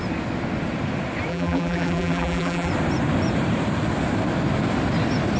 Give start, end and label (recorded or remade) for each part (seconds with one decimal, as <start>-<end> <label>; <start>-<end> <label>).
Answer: 0.0-1.3 recorded; 1.3-2.7 remade; 2.7-5.4 recorded